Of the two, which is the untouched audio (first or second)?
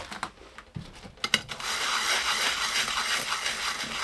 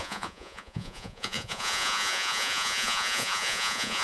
first